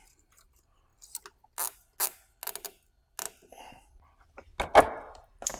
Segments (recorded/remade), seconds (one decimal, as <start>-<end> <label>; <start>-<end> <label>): 0.0-0.9 remade; 0.9-3.6 recorded; 3.6-4.5 remade; 4.5-5.1 recorded; 5.1-5.6 remade